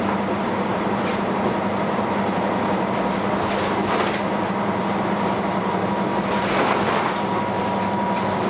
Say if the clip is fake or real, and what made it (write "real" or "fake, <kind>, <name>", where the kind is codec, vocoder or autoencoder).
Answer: real